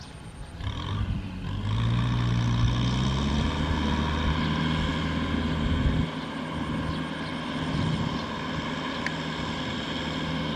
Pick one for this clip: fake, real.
real